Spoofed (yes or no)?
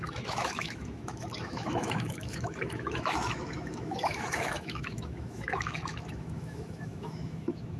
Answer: yes